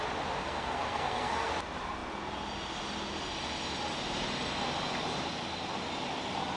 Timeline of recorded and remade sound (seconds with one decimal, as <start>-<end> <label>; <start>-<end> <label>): 0.0-0.4 recorded; 0.4-1.5 remade; 1.5-6.6 recorded